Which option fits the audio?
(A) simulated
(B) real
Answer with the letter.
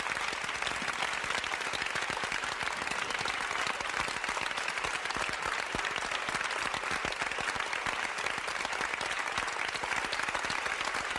A